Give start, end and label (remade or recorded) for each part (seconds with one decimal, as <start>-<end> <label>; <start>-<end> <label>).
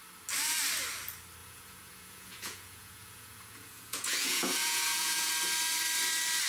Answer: 0.0-1.4 recorded; 1.4-5.3 remade; 5.3-6.5 recorded